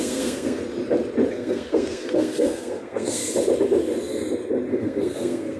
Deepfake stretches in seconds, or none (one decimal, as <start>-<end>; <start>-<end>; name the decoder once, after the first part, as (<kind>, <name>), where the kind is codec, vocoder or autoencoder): 0.0-0.6 (codec, SNAC); 1.3-3.2; 4.7-5.6

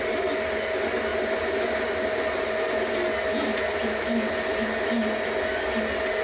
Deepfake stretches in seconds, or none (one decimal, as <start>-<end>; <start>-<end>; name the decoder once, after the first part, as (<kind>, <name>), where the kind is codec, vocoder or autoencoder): 1.1-1.6 (vocoder, BigVGAN v2); 3.5-5.0

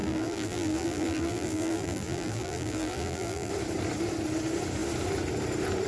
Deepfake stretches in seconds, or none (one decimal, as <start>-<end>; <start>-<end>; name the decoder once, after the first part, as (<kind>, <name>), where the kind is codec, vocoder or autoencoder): 0.0-3.5 (vocoder, BigVGAN v2)

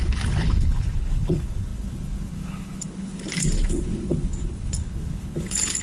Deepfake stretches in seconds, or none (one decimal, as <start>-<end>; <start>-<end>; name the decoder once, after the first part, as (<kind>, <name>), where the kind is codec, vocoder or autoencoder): 0.0-5.8 (codec, HILCodec)

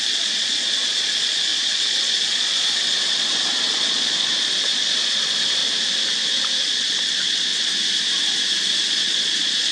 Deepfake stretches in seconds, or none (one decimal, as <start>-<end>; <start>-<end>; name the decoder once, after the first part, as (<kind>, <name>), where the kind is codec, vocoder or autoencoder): 0.0-5.6 (vocoder, Vocos); 6.6-7.5; 8.9-9.7